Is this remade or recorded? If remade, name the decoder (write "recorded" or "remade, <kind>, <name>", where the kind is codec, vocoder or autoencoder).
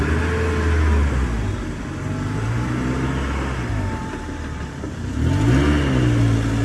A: recorded